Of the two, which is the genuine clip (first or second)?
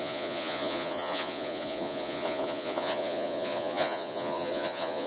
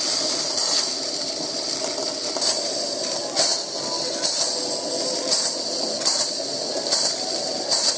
second